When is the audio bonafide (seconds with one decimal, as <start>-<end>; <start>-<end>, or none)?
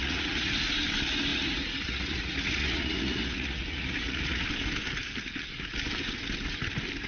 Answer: 0.5-1.3; 4.5-7.1